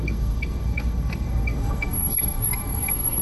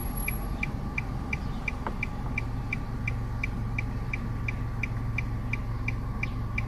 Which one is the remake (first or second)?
first